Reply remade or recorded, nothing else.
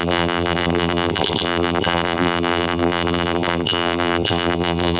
remade